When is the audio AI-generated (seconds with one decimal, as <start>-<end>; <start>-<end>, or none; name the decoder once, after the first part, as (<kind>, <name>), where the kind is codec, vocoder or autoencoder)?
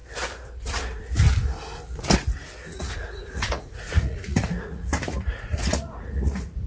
2.7-6.7 (vocoder, Vocos)